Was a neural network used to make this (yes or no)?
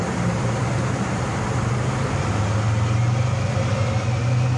no